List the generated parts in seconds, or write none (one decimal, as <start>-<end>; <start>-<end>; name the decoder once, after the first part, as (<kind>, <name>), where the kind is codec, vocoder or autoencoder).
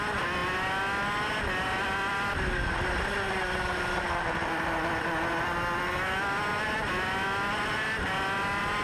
none